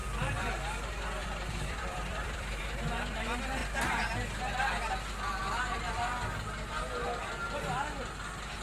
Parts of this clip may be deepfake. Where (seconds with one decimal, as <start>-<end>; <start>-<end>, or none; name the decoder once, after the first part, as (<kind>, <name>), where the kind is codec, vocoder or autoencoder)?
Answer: 0.0-0.5 (vocoder, BigVGAN v2); 1.2-2.6